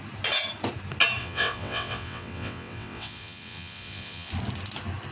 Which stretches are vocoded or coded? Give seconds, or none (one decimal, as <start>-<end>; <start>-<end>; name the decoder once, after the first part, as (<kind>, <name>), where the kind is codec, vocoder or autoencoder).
1.2-4.3 (vocoder, WaveNeXt)